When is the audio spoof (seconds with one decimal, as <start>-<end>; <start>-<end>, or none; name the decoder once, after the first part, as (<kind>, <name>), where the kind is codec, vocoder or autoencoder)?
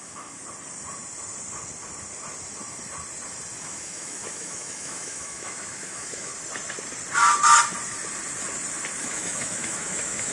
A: 0.0-0.4 (autoencoder, DAC-VAE); 3.6-6.3; 9.0-10.3